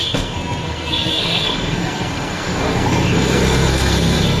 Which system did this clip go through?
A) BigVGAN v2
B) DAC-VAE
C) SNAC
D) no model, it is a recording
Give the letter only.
C